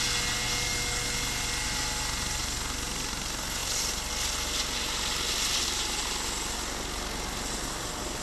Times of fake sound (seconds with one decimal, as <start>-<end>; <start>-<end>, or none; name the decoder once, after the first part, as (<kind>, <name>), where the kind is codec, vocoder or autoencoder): none